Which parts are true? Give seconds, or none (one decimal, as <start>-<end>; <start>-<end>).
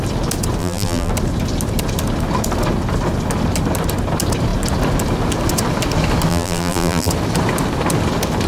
0.0-0.6; 1.1-6.3; 7.1-8.5